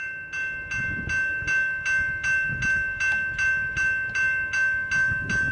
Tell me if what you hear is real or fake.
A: real